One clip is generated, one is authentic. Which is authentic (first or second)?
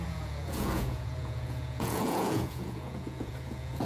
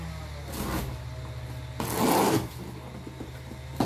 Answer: second